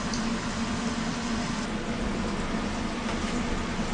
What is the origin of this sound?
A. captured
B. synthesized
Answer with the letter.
A